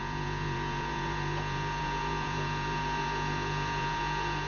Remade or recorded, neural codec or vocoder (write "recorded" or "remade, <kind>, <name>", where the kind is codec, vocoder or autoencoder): remade, vocoder, Vocos